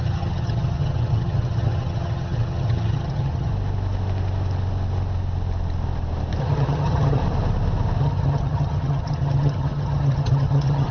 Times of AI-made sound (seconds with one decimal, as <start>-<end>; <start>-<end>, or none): 0.0-3.5; 6.4-7.2; 8.0-10.9